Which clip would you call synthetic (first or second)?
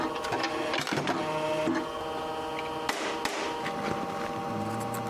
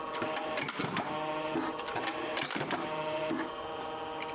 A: second